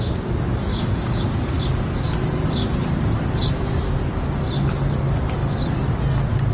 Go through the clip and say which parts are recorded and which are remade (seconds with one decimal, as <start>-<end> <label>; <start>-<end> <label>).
0.0-0.7 recorded; 0.7-1.2 remade; 1.2-6.5 recorded